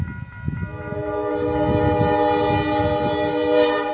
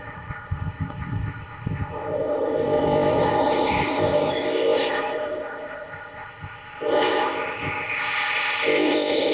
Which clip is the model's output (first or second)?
second